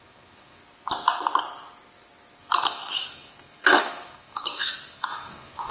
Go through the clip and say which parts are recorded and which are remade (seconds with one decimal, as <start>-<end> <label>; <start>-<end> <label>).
0.0-0.6 remade; 0.6-2.4 recorded; 2.4-5.7 remade